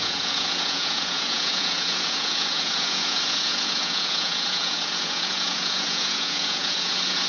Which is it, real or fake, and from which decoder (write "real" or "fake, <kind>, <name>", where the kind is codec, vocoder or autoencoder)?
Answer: fake, vocoder, Vocos